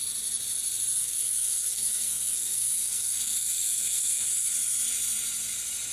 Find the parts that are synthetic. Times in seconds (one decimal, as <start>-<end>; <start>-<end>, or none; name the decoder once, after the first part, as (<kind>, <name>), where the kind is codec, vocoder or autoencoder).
1.0-4.5 (codec, SNAC)